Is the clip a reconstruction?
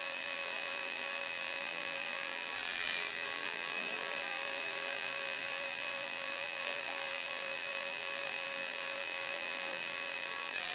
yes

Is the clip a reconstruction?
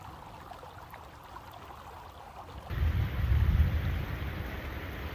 no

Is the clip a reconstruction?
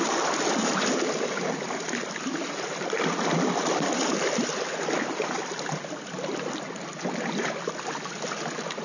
no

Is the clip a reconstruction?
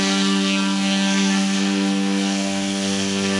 yes